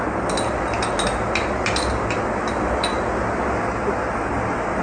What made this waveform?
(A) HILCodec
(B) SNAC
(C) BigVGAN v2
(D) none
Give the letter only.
D